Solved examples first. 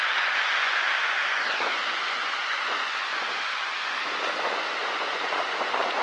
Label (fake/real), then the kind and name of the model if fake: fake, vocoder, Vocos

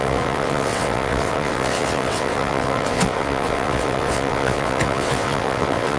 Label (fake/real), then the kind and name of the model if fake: fake, vocoder, WaveNeXt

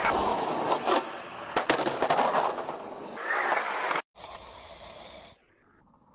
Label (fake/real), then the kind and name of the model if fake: real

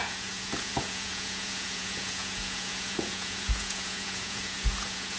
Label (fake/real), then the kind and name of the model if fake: fake, vocoder, Vocos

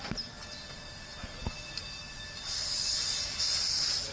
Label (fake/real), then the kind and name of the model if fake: real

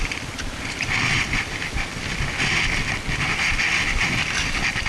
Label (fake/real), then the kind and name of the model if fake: real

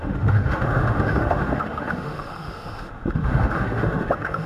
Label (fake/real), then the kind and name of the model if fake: fake, autoencoder, DAC-VAE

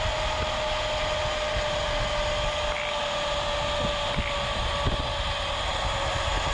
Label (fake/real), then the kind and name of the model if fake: real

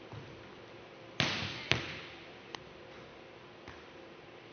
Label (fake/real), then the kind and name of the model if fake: real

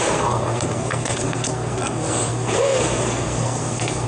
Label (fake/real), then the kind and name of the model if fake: fake, codec, SNAC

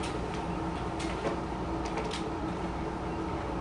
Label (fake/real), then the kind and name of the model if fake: real